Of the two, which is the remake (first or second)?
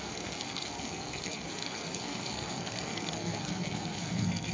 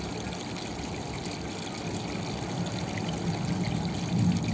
first